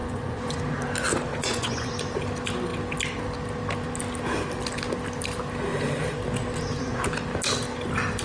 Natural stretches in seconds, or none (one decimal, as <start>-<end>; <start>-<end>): 0.6-1.3; 2.0-8.2